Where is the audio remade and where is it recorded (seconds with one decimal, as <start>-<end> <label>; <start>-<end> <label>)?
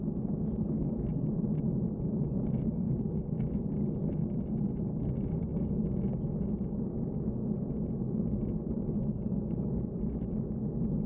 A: 0.0-11.1 recorded